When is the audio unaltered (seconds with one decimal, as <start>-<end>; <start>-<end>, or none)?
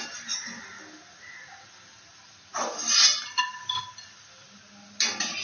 0.0-2.5; 3.4-5.4